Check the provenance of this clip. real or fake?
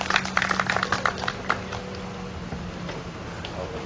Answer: real